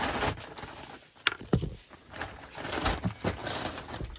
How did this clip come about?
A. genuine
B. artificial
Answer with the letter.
A